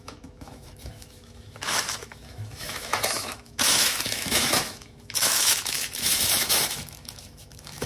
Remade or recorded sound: remade